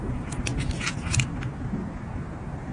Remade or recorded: recorded